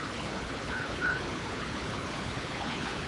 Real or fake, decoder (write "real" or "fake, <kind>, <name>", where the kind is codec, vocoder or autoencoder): fake, codec, HILCodec